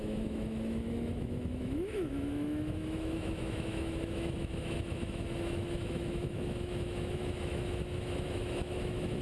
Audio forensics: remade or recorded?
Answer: remade